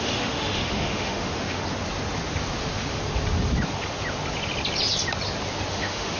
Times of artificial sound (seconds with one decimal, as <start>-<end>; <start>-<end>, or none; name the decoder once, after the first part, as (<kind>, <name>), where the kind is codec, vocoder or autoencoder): 0.0-1.6 (autoencoder, DAC-VAE); 2.6-3.0; 5.7-6.2